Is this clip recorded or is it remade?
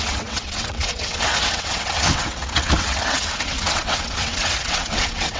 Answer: remade